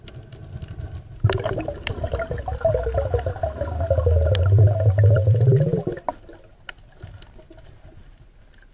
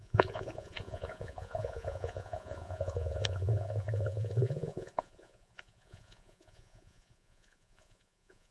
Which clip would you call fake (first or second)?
second